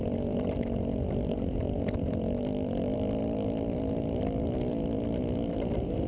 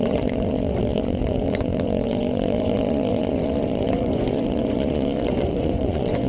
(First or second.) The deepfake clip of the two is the second